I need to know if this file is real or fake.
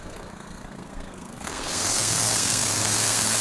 fake